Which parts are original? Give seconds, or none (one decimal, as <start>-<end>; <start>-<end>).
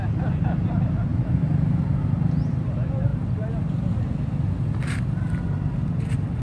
0.0-1.1; 2.0-6.4